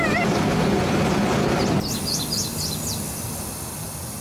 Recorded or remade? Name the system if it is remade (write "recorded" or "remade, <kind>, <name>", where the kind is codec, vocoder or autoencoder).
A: recorded